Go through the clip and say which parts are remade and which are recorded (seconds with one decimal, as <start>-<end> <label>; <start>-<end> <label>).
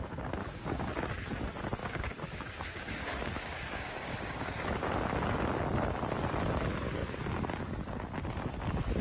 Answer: 0.0-0.4 recorded; 0.4-1.0 remade; 1.0-1.8 recorded; 1.8-4.9 remade; 4.9-9.0 recorded